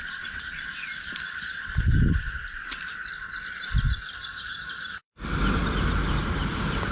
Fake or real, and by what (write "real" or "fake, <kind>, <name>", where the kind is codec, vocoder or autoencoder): fake, vocoder, BigVGAN v2